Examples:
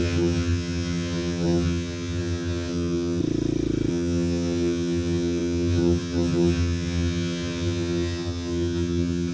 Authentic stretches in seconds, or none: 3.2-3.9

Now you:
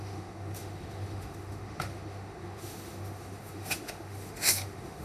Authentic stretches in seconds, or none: none

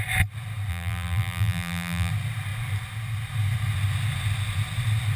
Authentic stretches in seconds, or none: 0.0-0.7; 2.1-5.2

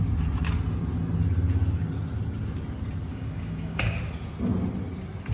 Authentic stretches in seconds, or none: 0.0-3.1; 4.0-5.3

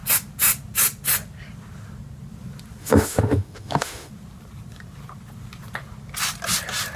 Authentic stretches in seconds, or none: 0.0-2.8; 4.1-7.0